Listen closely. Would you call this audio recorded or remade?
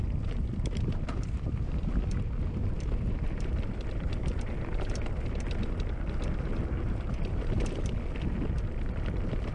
remade